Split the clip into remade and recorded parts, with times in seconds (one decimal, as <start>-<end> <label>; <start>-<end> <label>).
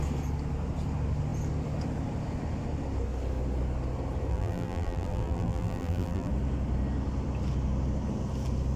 0.0-4.3 recorded; 4.3-6.3 remade; 6.3-8.8 recorded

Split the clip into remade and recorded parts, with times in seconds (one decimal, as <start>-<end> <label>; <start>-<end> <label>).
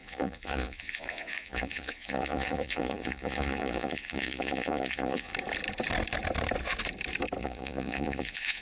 0.0-5.3 remade; 5.3-7.4 recorded; 7.4-8.6 remade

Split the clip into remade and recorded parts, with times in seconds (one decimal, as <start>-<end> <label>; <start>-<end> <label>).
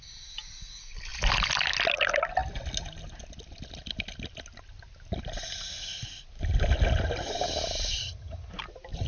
0.0-8.0 recorded; 8.0-8.5 remade; 8.5-9.1 recorded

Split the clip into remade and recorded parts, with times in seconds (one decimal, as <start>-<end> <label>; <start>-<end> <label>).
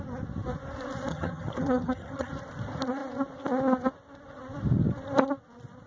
0.0-1.1 recorded; 1.1-2.3 remade; 2.3-5.9 recorded